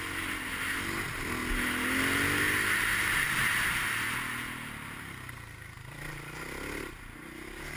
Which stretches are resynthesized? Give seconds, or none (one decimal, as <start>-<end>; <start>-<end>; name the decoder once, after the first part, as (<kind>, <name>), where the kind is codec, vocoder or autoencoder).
none